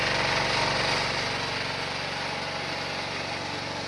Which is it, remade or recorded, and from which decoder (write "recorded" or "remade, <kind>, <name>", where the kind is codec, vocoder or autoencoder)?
recorded